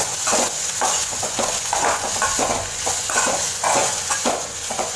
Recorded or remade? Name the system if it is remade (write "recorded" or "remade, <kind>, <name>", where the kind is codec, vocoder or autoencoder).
remade, vocoder, Vocos